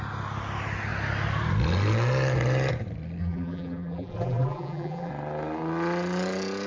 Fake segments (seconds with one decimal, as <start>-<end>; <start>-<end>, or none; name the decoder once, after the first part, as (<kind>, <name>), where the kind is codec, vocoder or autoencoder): 3.2-5.1 (vocoder, BigVGAN v2)